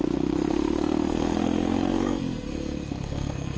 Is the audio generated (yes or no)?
yes